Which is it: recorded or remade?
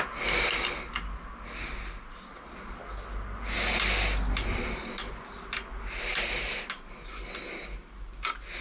recorded